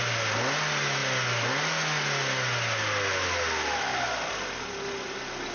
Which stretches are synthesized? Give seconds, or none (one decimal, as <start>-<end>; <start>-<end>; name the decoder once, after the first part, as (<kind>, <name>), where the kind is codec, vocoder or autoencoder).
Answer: none